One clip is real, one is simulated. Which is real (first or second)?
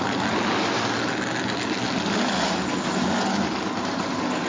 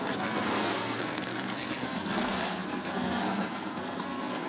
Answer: first